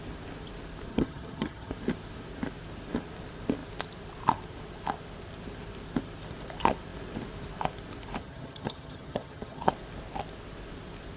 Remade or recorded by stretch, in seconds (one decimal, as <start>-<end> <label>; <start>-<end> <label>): 0.0-0.9 recorded; 0.9-1.7 remade; 1.7-8.2 recorded; 8.2-9.7 remade; 9.7-11.2 recorded